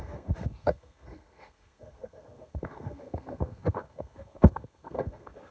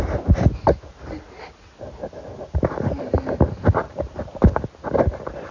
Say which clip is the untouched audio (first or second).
second